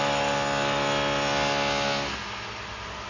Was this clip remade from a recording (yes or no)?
no